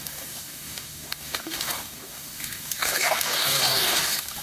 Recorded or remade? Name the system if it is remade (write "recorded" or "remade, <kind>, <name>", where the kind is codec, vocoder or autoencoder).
remade, codec, DAC